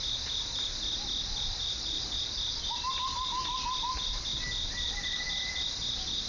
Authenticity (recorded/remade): recorded